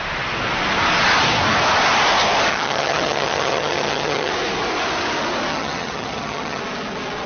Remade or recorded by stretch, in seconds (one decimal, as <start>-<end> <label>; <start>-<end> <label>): 0.0-2.5 recorded; 2.5-4.3 remade; 4.3-5.5 recorded; 5.5-6.6 remade; 6.6-7.3 recorded